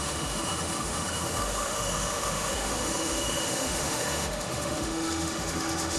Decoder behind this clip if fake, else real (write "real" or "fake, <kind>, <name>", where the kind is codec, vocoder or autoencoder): fake, autoencoder, DAC-VAE